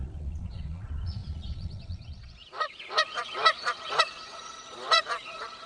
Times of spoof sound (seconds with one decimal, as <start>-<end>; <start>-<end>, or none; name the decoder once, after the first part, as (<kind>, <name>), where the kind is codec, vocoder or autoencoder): 0.0-5.7 (vocoder, Vocos)

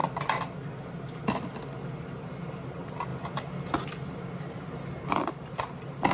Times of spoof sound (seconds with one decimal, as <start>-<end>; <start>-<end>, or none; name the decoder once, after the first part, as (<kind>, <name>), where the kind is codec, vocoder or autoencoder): none

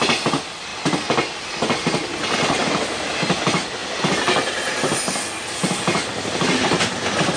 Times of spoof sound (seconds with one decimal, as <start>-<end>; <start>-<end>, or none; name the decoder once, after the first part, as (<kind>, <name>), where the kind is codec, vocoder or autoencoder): none

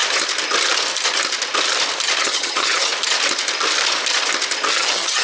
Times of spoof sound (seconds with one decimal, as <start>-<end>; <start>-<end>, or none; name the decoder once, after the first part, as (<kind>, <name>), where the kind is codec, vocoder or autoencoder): 2.2-2.9 (vocoder, HiFi-GAN); 4.7-5.2